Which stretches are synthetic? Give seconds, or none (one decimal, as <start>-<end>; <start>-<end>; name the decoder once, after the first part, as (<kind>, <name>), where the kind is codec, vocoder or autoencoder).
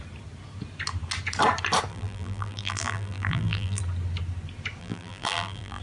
1.9-3.8 (vocoder, BigVGAN v2); 4.8-5.8